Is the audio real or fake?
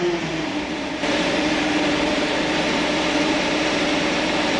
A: fake